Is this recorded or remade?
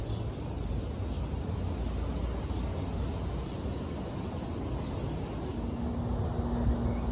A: recorded